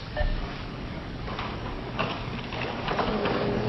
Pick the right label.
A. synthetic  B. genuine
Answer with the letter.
A